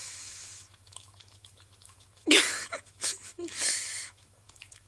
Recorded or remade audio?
remade